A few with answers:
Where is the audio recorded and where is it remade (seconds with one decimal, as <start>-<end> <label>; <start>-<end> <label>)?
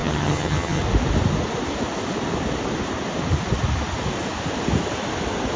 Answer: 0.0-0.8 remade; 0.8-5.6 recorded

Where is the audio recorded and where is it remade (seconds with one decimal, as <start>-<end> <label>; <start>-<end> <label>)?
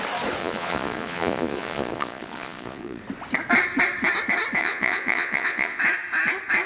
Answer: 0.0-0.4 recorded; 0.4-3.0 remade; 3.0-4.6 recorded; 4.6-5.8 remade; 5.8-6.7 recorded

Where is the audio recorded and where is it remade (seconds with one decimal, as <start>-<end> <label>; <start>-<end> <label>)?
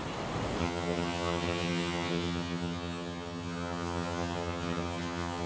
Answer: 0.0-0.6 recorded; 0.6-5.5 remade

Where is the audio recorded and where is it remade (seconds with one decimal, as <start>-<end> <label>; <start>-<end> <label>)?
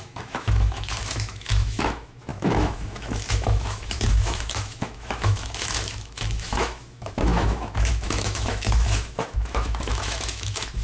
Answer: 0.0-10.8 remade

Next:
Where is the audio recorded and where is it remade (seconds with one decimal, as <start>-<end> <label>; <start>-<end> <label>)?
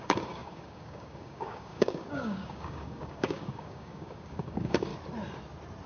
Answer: 0.0-4.9 remade; 4.9-5.9 recorded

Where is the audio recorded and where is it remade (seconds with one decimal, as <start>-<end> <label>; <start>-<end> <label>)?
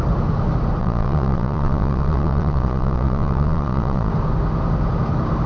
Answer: 0.0-0.8 recorded; 0.8-4.1 remade; 4.1-5.5 recorded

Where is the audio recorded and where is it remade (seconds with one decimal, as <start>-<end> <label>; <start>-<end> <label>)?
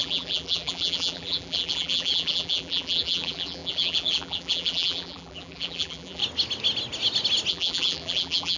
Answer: 0.0-6.2 remade; 6.2-7.5 recorded; 7.5-8.6 remade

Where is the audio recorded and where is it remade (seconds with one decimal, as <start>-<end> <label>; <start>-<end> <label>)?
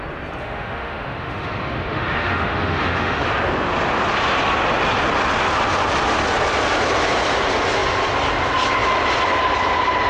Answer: 0.0-0.4 recorded; 0.4-3.2 remade; 3.2-10.1 recorded